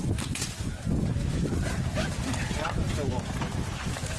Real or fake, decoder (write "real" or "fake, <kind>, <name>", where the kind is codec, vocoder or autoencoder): real